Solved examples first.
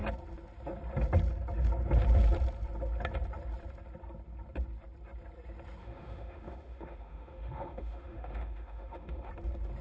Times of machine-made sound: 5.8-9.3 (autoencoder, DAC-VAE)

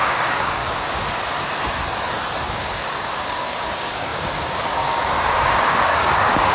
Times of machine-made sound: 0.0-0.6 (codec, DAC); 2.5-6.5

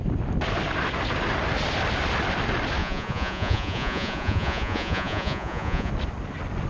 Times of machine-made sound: 2.8-5.9 (vocoder, Vocos)

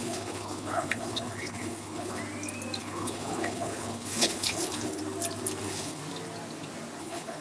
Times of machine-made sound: 0.0-2.2 (codec, HILCodec); 2.8-5.0; 5.6-6.0; 7.0-7.4